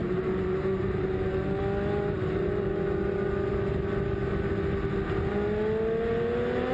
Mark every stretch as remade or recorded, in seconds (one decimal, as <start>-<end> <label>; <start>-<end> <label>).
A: 0.0-1.6 remade; 1.6-6.7 recorded

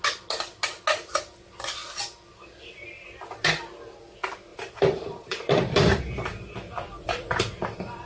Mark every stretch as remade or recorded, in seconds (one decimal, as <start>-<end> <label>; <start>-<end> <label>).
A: 0.0-4.5 recorded; 4.5-8.1 remade

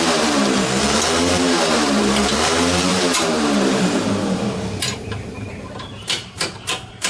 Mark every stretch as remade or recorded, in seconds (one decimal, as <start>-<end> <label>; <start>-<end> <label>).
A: 0.0-7.1 remade

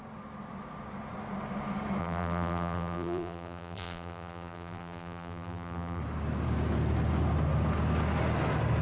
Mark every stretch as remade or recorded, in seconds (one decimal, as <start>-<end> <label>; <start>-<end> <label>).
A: 0.0-2.0 recorded; 2.0-6.0 remade; 6.0-8.8 recorded

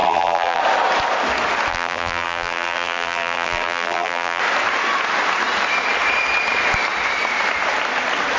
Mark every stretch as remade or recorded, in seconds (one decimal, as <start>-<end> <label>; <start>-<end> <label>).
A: 0.0-0.6 remade; 0.6-1.7 recorded; 1.7-4.4 remade; 4.4-8.4 recorded